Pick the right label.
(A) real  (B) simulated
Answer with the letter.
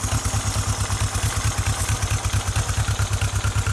A